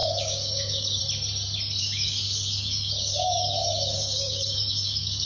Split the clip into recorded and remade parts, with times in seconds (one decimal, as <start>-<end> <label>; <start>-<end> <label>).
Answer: 0.0-1.0 remade; 1.0-1.8 recorded; 1.8-5.3 remade